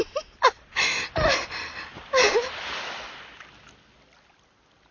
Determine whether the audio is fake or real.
real